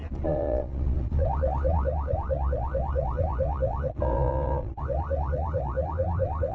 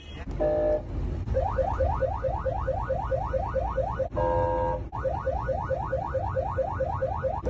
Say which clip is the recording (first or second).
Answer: second